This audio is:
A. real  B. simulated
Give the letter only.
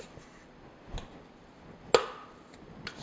A